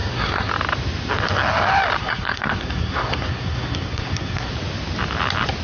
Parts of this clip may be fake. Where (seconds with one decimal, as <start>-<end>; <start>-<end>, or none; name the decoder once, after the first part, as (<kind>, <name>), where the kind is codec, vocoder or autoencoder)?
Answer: 0.0-0.5 (codec, SNAC); 2.0-4.5